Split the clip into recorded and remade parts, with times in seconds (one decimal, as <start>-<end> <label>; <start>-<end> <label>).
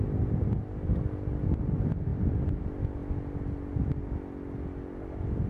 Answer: 0.0-2.1 recorded; 2.1-2.6 remade; 2.6-5.5 recorded